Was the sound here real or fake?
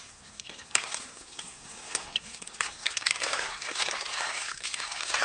fake